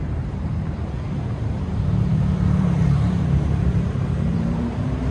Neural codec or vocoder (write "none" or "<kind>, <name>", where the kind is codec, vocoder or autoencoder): vocoder, BigVGAN v2